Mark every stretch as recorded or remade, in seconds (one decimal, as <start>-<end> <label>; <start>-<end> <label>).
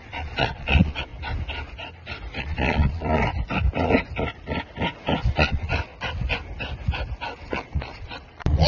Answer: 0.0-1.1 remade; 1.1-2.4 recorded; 2.4-3.3 remade; 3.3-5.3 recorded; 5.3-5.7 remade; 5.7-7.5 recorded; 7.5-8.7 remade